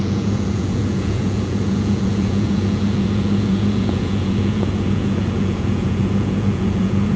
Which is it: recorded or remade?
remade